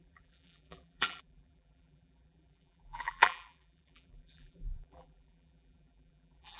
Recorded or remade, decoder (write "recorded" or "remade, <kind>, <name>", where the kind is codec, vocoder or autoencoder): remade, vocoder, BigVGAN v2